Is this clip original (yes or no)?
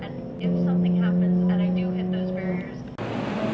yes